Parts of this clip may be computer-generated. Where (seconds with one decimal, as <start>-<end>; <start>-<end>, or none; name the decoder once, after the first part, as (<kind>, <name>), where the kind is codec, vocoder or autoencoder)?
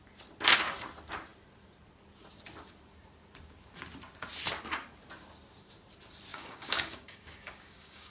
6.3-8.1 (codec, DAC)